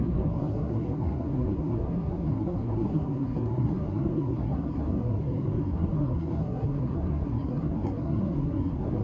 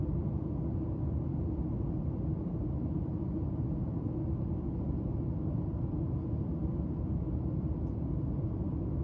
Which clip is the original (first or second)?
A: second